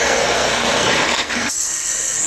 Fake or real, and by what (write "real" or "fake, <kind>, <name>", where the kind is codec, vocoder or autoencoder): fake, codec, SNAC